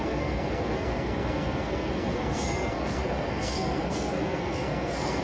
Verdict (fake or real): fake